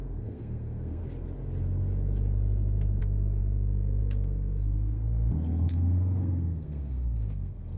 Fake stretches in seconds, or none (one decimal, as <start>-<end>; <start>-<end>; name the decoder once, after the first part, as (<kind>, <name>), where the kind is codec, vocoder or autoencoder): 0.0-1.0 (codec, SNAC); 3.0-7.8